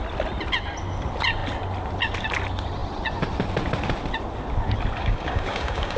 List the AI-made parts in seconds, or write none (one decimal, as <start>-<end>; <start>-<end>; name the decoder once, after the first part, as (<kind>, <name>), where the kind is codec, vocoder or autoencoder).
5.0-6.0 (codec, DAC)